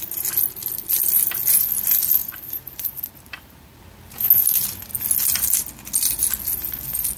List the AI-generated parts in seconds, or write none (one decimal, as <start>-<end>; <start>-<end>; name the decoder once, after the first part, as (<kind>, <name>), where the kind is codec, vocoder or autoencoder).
2.2-3.8 (vocoder, BigVGAN v2)